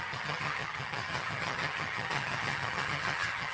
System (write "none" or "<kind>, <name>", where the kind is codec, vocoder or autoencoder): vocoder, HiFi-GAN